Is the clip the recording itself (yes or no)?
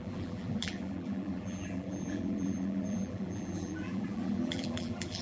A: no